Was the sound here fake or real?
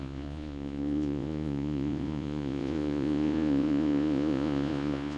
fake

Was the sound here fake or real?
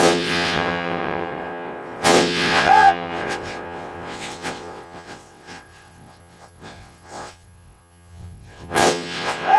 fake